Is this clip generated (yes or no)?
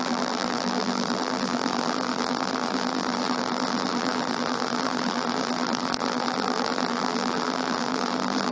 yes